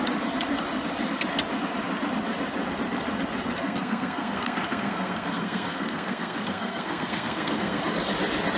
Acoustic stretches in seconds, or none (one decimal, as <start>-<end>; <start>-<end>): 0.0-3.6; 7.8-8.6